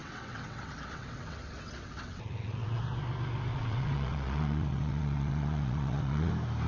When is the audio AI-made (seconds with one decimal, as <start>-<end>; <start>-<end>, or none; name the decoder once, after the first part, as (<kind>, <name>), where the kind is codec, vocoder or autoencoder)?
0.0-2.8 (vocoder, WaveNeXt); 3.5-6.3